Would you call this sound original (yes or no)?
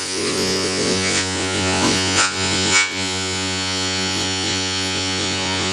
no